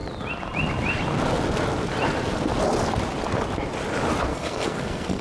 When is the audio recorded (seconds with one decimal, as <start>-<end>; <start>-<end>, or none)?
0.0-4.3